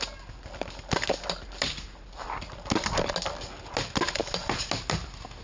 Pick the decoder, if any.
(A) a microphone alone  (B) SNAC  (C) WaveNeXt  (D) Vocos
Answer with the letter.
A